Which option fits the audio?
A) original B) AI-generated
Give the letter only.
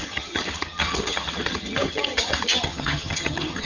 B